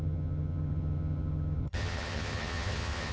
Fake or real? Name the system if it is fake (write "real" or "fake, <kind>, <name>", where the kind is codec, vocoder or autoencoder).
fake, vocoder, HiFi-GAN